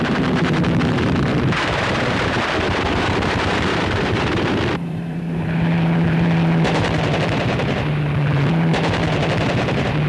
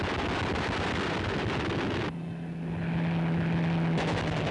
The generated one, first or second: first